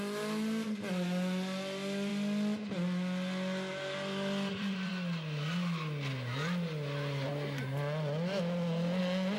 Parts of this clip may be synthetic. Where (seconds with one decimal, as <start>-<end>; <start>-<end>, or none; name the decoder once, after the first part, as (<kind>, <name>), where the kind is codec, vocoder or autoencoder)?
3.7-4.9 (vocoder, BigVGAN v2)